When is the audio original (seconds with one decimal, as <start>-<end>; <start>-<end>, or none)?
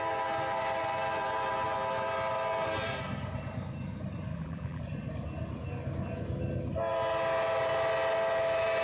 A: 0.0-4.3; 4.8-8.8